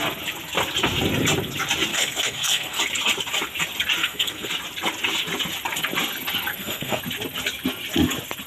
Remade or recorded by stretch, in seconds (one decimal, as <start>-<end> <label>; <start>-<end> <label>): 0.0-1.9 recorded; 1.9-2.8 remade; 2.8-4.0 recorded; 4.0-4.5 remade; 4.5-6.5 recorded; 6.5-7.0 remade; 7.0-8.5 recorded

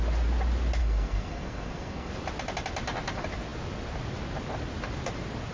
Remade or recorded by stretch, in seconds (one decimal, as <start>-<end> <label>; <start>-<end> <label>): 0.0-0.8 recorded; 0.8-2.1 remade; 2.1-5.5 recorded

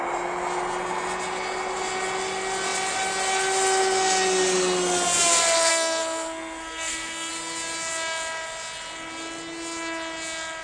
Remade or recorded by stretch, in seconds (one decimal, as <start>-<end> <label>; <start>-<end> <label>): 0.0-5.7 recorded; 5.7-7.3 remade; 7.3-10.6 recorded

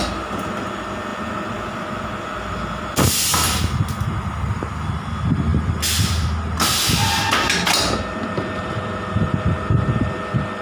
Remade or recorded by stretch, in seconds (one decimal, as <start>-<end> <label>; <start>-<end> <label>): 0.0-10.6 recorded

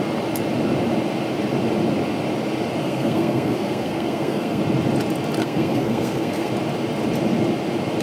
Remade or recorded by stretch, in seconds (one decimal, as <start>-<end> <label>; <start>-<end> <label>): 0.0-2.8 recorded; 2.8-4.6 remade; 4.6-5.4 recorded; 5.4-6.5 remade; 6.5-8.0 recorded

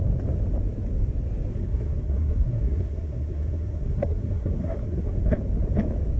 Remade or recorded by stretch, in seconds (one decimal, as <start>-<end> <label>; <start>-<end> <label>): 0.0-1.5 recorded; 1.5-5.2 remade; 5.2-6.2 recorded

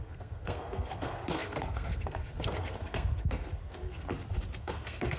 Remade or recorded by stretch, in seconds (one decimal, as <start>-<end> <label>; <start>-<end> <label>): 0.0-4.1 remade; 4.1-4.6 recorded; 4.6-5.2 remade